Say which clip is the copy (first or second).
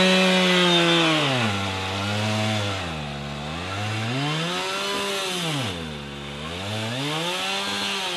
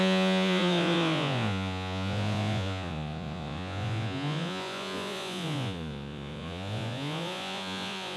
second